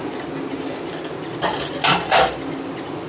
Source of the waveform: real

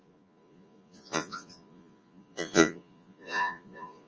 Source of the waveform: fake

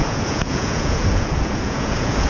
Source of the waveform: fake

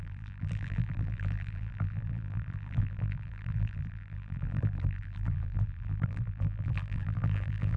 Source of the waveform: fake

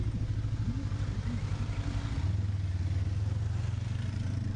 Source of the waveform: real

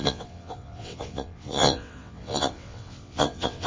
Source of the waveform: fake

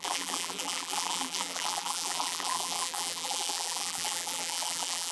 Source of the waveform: fake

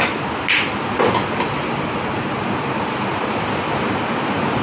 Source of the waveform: real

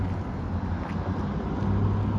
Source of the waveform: real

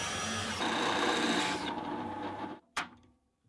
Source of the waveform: fake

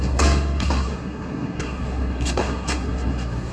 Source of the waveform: fake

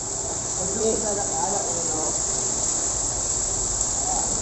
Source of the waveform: fake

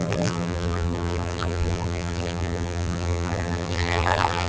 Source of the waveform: fake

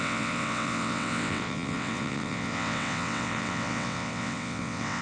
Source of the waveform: fake